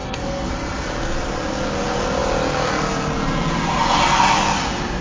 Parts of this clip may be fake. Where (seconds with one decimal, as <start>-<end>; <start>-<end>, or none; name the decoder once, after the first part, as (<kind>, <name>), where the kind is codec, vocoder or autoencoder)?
0.0-0.5 (codec, SNAC)